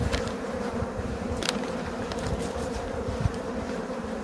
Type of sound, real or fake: fake